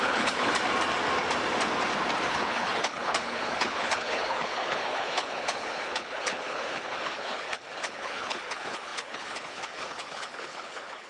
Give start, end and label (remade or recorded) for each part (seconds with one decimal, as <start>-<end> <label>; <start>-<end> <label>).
0.0-0.5 remade; 0.5-2.3 recorded; 2.3-11.1 remade